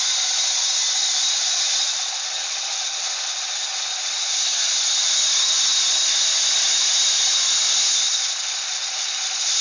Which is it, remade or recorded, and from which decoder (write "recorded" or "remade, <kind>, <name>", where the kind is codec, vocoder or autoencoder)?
recorded